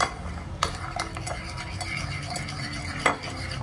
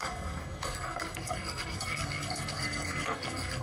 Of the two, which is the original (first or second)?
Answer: first